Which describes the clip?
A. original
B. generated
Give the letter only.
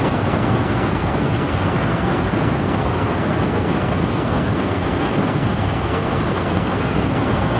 B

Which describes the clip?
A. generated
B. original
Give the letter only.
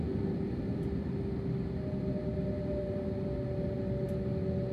B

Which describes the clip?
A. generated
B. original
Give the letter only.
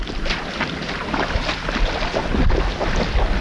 B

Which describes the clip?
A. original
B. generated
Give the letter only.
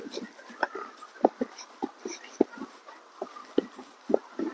A